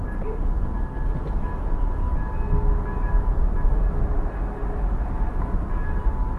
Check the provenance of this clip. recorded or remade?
recorded